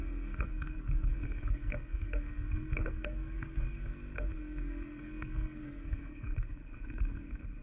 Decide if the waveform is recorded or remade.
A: remade